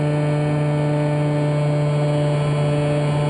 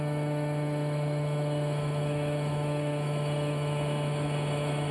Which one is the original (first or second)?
first